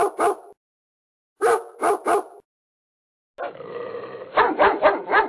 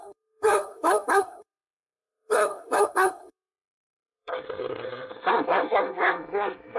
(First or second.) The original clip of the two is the first